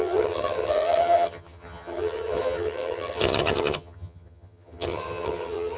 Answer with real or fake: fake